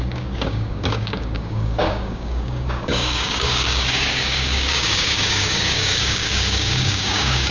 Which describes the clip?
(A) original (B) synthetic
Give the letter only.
B